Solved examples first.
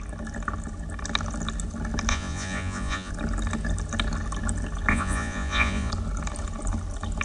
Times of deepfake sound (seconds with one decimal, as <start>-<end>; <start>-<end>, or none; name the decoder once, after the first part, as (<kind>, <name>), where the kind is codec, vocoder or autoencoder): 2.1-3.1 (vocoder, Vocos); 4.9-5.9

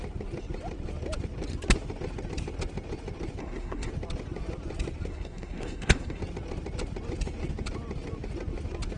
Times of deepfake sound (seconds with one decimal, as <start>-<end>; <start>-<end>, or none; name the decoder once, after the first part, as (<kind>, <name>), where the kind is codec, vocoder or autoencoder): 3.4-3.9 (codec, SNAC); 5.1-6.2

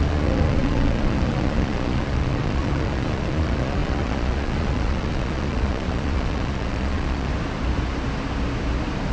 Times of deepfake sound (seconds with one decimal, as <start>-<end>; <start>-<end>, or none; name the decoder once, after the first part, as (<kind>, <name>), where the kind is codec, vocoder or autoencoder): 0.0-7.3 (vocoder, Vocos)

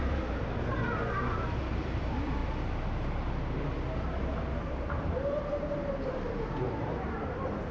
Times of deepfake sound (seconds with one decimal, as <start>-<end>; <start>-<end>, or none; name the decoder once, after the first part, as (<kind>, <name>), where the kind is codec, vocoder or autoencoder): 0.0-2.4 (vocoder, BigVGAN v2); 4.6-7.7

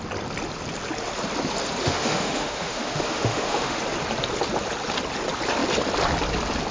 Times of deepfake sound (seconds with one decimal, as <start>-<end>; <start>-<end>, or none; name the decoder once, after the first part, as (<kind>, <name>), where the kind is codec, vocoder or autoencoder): 1.8-3.8 (autoencoder, DAC-VAE)

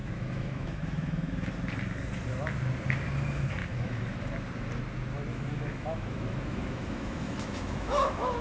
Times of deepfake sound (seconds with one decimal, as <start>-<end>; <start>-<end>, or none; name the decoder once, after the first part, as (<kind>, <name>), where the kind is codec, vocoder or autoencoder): 0.0-1.5 (autoencoder, DAC-VAE); 3.6-4.2; 5.3-8.4

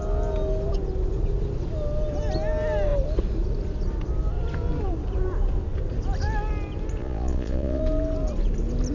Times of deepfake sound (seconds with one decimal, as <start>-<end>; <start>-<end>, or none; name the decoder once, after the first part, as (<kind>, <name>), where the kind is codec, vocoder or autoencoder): 7.0-7.8 (vocoder, Vocos)

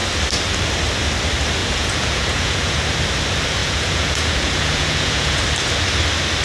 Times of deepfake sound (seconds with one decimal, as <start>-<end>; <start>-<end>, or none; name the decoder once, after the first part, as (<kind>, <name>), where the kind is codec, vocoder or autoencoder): 1.6-2.8 (vocoder, Vocos); 3.6-5.4